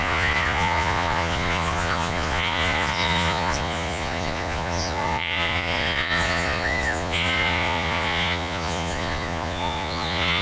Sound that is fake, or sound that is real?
fake